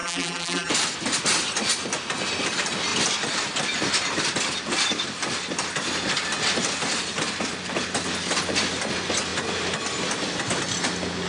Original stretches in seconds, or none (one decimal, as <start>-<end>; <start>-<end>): 0.7-11.3